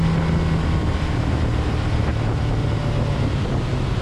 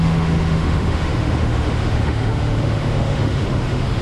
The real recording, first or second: first